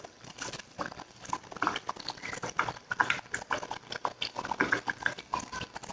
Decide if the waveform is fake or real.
real